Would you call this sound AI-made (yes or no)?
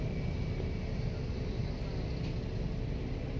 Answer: no